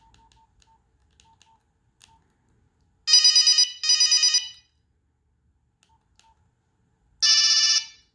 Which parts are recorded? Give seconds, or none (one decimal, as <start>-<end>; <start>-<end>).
0.0-8.1